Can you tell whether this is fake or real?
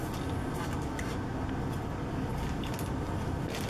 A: real